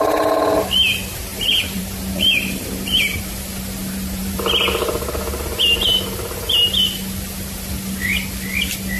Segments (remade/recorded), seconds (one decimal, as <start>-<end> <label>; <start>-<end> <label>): 0.0-1.3 recorded; 1.3-3.2 remade; 3.2-3.8 recorded; 3.8-4.4 remade; 4.4-9.0 recorded